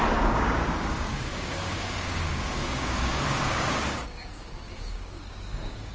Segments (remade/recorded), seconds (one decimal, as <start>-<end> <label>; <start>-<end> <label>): 0.0-5.9 remade